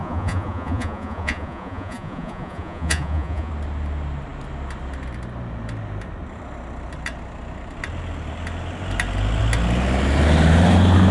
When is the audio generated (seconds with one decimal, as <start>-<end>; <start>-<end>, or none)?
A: 0.0-3.5